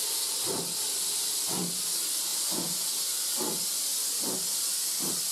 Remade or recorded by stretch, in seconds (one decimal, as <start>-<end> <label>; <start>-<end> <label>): 0.0-5.3 recorded